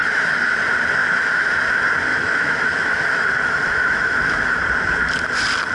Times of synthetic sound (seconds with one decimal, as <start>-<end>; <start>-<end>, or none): 0.0-0.5; 1.0-1.5; 2.1-4.6